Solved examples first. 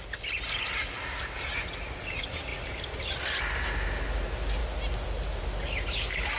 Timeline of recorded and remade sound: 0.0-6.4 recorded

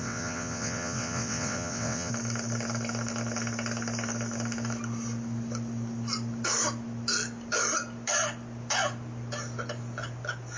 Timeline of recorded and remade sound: 0.0-2.1 remade; 2.1-10.6 recorded

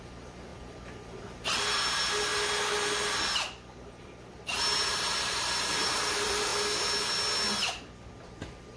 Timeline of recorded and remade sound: 0.0-2.3 remade; 2.3-3.7 recorded; 3.7-6.5 remade; 6.5-8.2 recorded; 8.2-8.8 remade